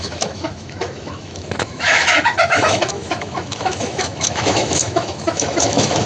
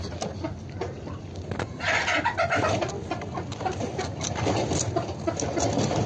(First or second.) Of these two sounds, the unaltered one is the second